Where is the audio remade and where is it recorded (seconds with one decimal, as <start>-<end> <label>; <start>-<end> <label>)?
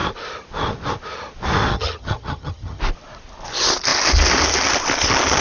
0.0-1.7 recorded; 1.7-2.8 remade; 2.8-5.4 recorded